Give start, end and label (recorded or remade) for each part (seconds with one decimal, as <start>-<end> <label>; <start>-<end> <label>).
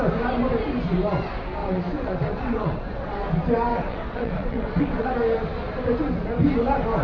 0.0-1.6 recorded; 1.6-3.2 remade; 3.2-3.7 recorded; 3.7-5.1 remade; 5.1-7.0 recorded